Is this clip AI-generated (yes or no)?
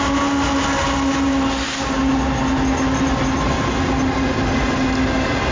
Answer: no